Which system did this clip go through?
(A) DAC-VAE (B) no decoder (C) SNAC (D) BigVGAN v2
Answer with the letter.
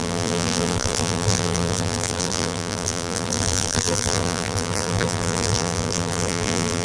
D